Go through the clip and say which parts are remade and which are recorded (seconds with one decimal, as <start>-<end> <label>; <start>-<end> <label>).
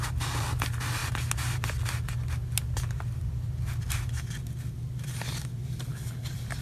0.0-5.9 recorded; 5.9-6.6 remade